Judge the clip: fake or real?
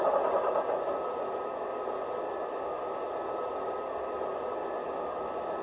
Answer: real